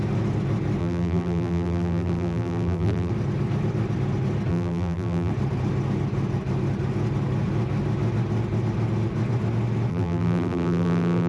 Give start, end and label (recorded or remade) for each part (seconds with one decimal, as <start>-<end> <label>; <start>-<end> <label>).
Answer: 0.0-0.8 recorded; 0.8-3.1 remade; 3.1-4.5 recorded; 4.5-5.3 remade; 5.3-9.9 recorded; 9.9-11.3 remade